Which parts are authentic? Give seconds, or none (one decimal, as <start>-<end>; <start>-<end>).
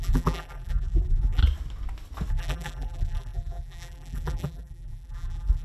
1.4-2.3